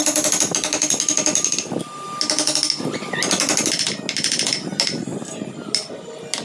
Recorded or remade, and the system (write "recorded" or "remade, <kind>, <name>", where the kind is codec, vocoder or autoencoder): recorded